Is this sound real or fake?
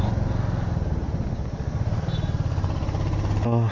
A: real